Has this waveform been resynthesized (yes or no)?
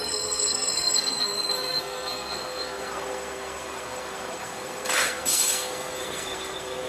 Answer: yes